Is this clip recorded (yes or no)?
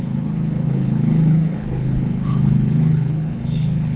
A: no